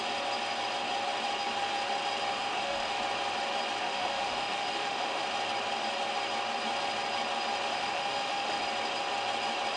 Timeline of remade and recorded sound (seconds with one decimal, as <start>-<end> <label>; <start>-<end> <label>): 0.0-2.3 recorded; 2.3-3.0 remade; 3.0-3.8 recorded; 3.8-5.2 remade; 5.2-7.7 recorded; 7.7-8.6 remade; 8.6-9.8 recorded